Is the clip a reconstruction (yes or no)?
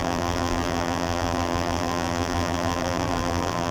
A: yes